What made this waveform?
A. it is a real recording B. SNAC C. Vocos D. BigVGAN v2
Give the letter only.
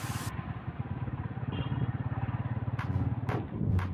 D